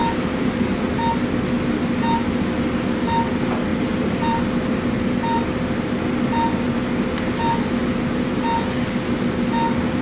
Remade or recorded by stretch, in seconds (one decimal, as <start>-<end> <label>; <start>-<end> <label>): 0.0-3.7 recorded; 3.7-4.4 remade; 4.4-10.0 recorded